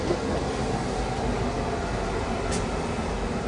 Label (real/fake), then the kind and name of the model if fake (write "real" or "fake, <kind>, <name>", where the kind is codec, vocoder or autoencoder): real